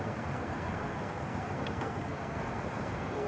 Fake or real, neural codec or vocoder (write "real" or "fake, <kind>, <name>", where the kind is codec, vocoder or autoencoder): fake, codec, SNAC